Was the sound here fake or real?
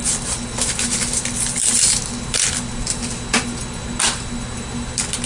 real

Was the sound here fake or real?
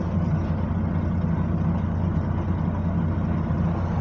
real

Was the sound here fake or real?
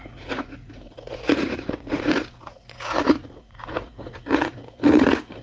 fake